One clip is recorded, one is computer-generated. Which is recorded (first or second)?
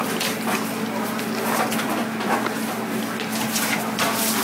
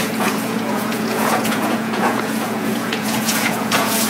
first